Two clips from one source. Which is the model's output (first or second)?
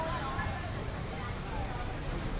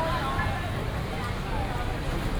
first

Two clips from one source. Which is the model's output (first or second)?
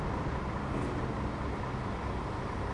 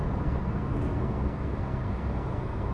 second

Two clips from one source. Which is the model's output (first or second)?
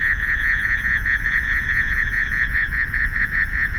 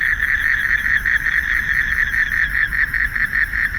first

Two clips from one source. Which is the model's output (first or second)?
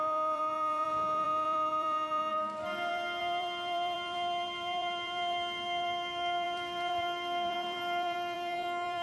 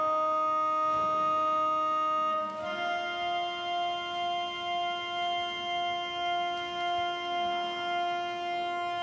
first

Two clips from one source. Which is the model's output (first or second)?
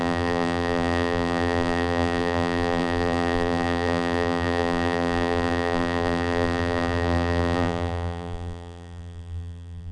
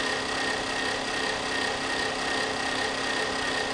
first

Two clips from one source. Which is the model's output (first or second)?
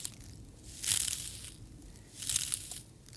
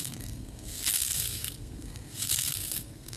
second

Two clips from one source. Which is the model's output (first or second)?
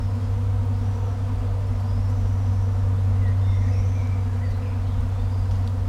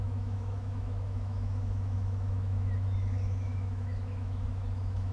second